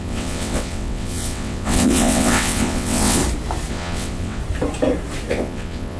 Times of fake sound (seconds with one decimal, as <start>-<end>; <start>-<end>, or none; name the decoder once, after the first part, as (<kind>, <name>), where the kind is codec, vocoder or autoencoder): 0.0-3.2 (vocoder, WaveNeXt); 3.7-4.4; 5.3-6.0